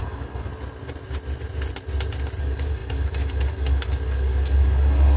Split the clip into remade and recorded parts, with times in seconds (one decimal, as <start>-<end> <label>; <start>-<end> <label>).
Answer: 0.0-0.5 remade; 0.5-2.4 recorded; 2.4-5.2 remade